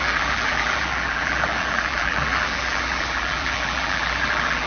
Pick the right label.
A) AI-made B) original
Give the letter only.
A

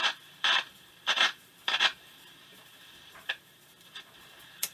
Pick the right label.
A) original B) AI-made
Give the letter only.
B